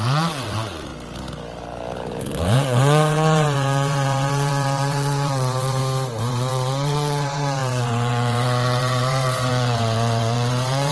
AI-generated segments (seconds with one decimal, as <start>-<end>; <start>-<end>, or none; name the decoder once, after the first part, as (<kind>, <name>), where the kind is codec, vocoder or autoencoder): 0.0-0.9 (vocoder, WaveNeXt); 2.2-5.8; 6.3-10.9